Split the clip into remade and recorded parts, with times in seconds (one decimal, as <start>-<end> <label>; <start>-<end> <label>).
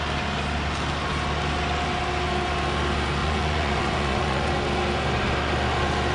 0.0-3.2 recorded; 3.2-4.5 remade; 4.5-6.1 recorded